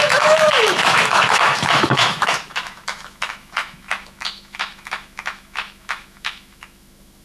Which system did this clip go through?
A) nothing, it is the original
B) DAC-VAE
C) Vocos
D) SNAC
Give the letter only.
B